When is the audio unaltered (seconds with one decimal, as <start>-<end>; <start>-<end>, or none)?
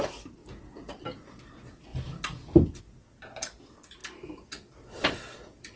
0.0-5.8